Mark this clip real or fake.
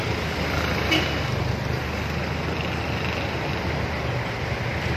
real